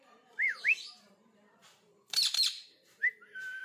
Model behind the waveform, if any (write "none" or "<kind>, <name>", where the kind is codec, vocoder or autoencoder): vocoder, BigVGAN v2